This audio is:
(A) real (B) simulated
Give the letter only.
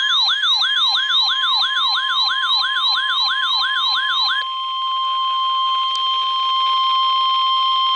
A